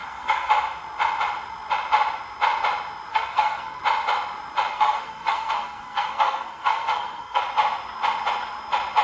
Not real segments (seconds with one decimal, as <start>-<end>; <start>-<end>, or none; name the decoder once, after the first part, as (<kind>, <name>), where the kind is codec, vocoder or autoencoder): 0.0-0.5 (codec, SNAC); 3.1-3.8; 4.7-7.4